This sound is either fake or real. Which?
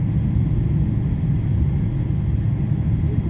real